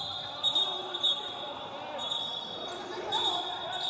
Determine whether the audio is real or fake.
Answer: real